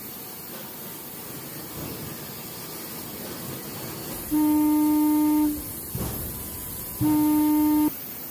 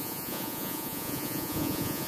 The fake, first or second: second